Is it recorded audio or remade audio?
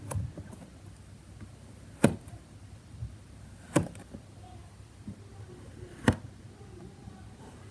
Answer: recorded